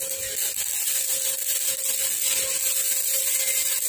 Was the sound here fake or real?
real